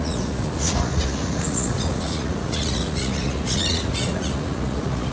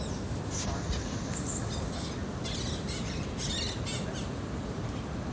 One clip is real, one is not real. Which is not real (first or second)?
first